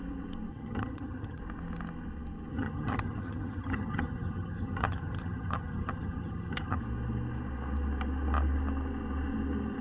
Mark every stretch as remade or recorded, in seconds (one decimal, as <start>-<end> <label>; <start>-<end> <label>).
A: 0.0-0.5 recorded; 0.5-1.4 remade; 1.4-2.5 recorded; 2.5-6.8 remade; 6.8-9.8 recorded